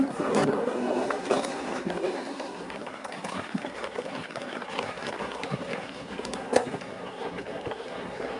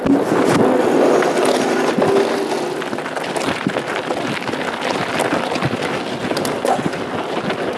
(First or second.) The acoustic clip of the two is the second